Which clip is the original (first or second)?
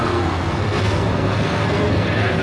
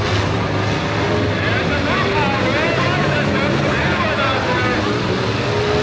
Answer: second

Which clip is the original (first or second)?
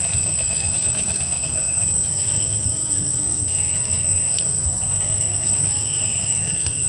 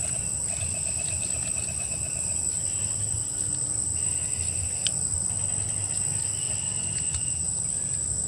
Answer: second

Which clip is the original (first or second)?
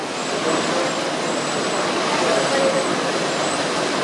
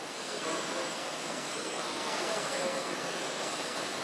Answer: first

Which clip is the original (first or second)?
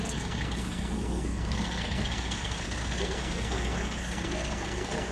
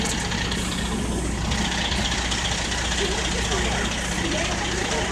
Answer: second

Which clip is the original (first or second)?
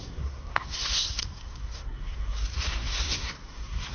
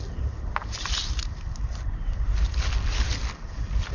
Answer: second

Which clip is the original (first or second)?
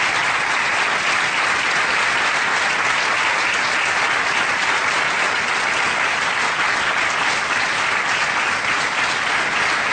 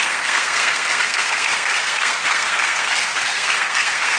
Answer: first